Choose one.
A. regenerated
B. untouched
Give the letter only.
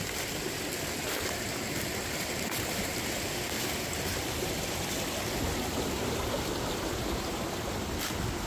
B